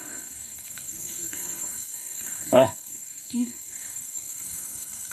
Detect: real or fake fake